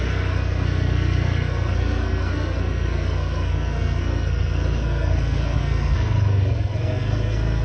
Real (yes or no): no